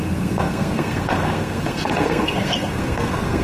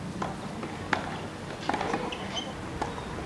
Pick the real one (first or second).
second